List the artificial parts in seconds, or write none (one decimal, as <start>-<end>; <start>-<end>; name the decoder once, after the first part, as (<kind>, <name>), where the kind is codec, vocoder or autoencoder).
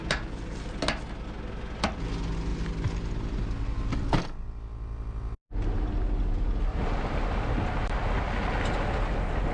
6.7-8.5 (vocoder, BigVGAN v2)